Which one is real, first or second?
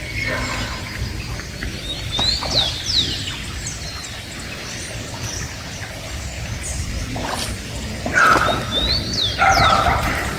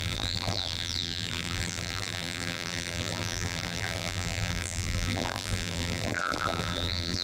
first